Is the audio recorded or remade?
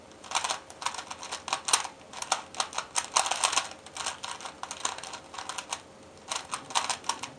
recorded